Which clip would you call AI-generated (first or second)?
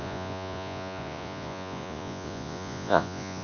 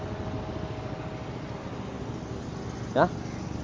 first